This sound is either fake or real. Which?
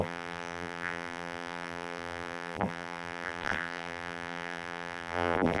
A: fake